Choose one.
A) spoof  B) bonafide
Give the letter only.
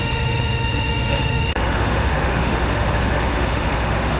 A